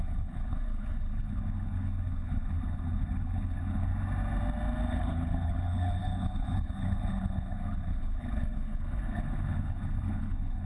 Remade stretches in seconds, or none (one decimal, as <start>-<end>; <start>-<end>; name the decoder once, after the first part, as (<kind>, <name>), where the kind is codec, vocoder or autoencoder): 0.0-3.9 (codec, HILCodec); 4.9-10.7